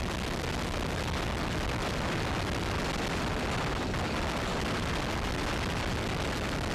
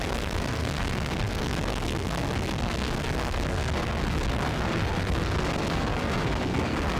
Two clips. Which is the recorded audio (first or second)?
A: first